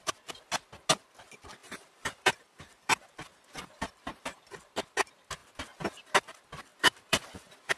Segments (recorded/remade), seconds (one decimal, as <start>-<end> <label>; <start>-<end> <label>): 0.0-1.6 recorded; 1.6-4.2 remade; 4.2-6.7 recorded; 6.7-7.8 remade